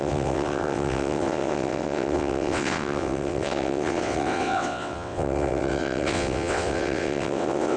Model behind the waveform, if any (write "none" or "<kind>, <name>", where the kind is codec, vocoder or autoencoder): vocoder, WaveNeXt